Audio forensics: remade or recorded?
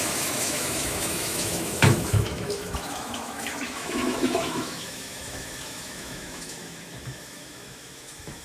remade